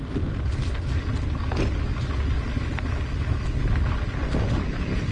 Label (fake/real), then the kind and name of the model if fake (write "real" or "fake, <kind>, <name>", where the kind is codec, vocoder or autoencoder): real